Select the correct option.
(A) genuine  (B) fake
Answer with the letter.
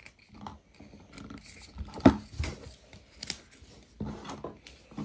A